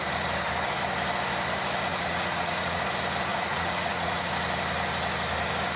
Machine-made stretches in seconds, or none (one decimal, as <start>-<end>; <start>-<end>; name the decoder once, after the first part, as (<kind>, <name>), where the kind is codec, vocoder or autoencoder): 1.9-2.8 (vocoder, Vocos); 3.3-4.3